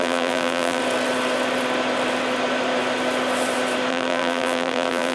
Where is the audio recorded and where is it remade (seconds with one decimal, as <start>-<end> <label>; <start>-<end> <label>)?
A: 0.0-0.8 remade; 0.8-3.9 recorded; 3.9-5.1 remade